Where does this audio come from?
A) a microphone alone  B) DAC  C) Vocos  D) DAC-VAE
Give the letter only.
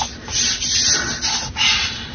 A